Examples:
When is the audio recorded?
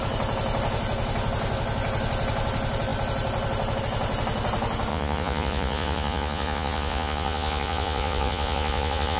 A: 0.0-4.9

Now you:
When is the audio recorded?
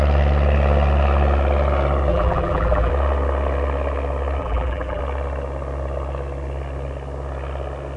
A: 0.0-2.1; 2.9-4.4; 5.0-8.0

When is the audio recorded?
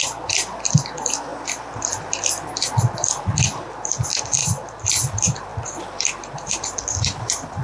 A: 1.3-3.2; 5.5-6.2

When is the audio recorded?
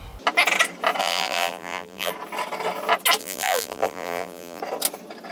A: 0.0-1.0; 2.1-3.2; 4.6-5.3